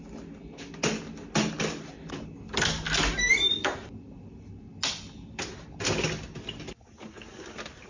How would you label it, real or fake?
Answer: real